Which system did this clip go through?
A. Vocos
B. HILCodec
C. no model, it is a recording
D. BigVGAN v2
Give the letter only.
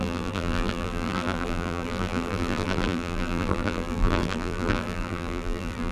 D